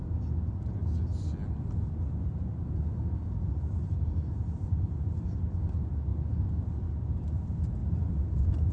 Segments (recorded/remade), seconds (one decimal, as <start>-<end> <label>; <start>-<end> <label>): 0.0-8.7 recorded